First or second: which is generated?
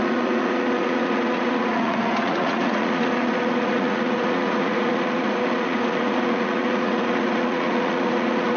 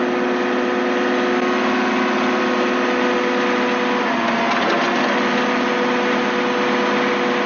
first